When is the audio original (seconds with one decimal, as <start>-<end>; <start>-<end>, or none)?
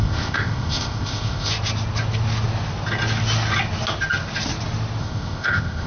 1.5-5.0